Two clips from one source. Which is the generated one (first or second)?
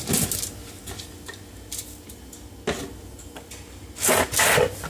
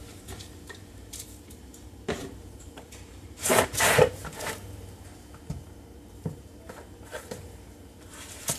second